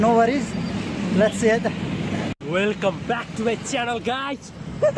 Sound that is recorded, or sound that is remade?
recorded